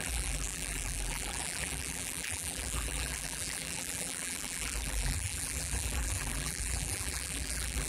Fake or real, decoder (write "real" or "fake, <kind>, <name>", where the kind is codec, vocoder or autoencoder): fake, vocoder, BigVGAN v2